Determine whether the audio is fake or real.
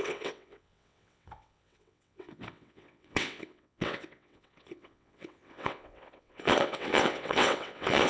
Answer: fake